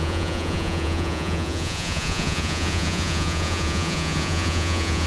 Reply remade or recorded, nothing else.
remade